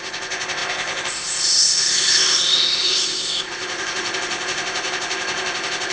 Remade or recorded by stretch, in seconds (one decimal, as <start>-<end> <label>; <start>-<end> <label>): 0.0-5.9 remade